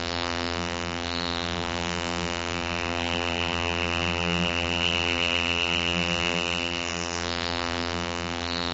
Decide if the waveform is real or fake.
fake